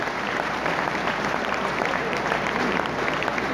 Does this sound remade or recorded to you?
remade